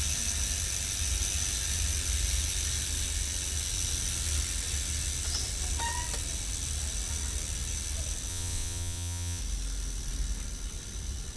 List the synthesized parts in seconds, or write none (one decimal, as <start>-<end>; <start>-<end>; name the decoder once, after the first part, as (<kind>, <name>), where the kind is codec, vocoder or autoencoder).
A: 8.3-9.4 (vocoder, WaveNeXt)